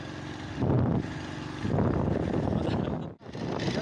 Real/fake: real